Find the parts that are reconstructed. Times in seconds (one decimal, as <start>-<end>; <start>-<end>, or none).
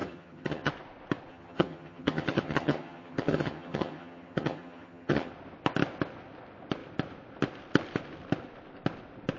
0.0-0.7; 1.3-5.3